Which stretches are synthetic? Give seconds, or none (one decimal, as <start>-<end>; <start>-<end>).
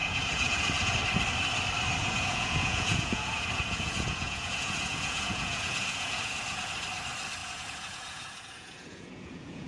0.0-1.0; 2.0-6.7; 7.4-9.7